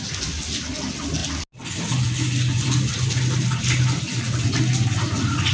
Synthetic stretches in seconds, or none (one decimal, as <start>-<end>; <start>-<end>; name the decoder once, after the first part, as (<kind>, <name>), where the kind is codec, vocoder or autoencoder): none

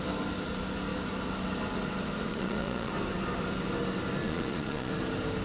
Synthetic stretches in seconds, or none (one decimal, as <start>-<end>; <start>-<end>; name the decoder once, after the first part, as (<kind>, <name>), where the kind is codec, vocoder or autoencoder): 2.3-2.9 (vocoder, Vocos); 4.2-4.9

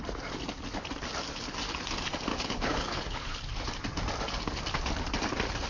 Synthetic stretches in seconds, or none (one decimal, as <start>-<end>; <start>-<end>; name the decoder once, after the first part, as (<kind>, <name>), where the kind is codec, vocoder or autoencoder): 2.3-3.5 (codec, HILCodec)

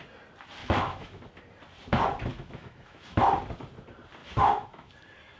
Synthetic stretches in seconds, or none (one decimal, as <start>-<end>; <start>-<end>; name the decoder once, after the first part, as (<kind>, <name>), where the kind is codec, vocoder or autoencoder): 0.6-1.2 (autoencoder, DAC-VAE); 2.3-3.2; 4.2-4.9

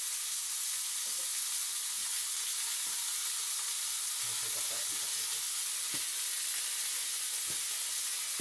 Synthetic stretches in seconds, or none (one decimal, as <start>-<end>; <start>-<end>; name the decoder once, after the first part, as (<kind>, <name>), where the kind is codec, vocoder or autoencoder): none